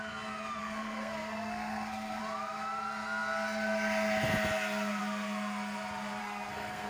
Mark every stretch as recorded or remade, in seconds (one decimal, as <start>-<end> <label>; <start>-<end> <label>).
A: 0.0-0.6 recorded; 0.6-2.2 remade; 2.2-6.2 recorded; 6.2-6.9 remade